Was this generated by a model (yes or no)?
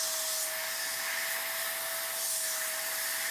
no